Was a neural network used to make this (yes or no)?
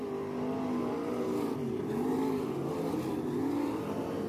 no